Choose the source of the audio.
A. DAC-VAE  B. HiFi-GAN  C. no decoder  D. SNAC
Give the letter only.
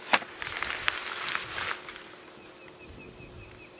C